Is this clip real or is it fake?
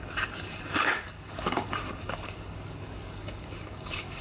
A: fake